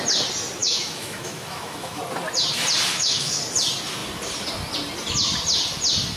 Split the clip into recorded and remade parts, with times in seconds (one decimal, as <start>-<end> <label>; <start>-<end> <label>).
0.0-0.6 recorded; 0.6-2.0 remade; 2.0-2.9 recorded; 2.9-3.4 remade; 3.4-6.2 recorded